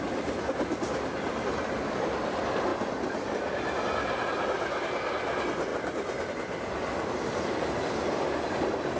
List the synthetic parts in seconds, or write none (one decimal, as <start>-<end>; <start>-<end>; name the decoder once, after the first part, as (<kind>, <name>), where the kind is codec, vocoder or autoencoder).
5.7-6.3 (vocoder, BigVGAN v2)